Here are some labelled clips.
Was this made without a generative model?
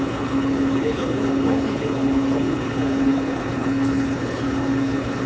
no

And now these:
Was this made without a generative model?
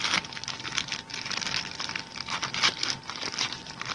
yes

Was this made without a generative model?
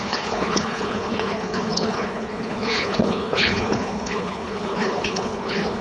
no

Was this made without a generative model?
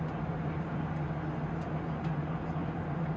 yes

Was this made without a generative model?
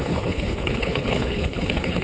no